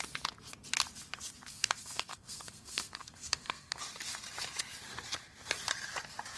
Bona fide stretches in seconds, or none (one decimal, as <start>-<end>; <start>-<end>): 0.0-1.5; 3.8-6.4